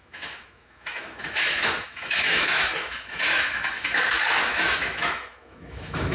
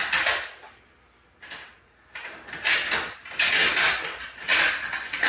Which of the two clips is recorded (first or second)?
second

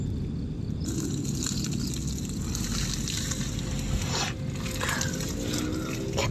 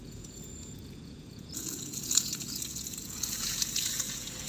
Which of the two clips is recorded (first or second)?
first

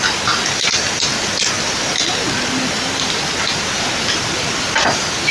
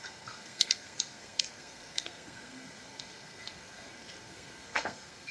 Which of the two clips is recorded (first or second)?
first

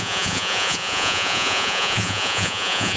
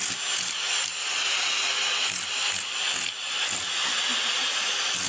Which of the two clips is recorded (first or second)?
second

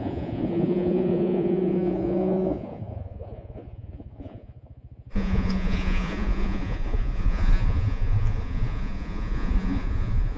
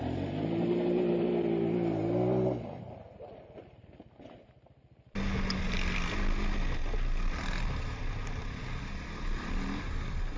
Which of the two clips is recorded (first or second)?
second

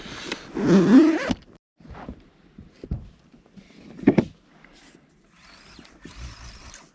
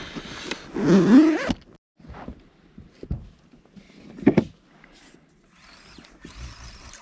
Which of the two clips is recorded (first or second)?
second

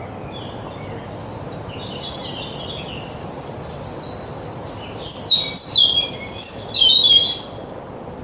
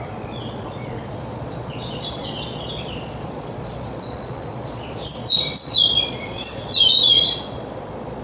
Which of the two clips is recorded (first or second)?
first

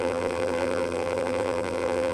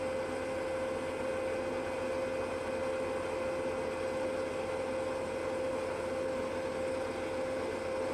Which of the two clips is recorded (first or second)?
second